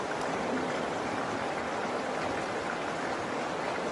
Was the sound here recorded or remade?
recorded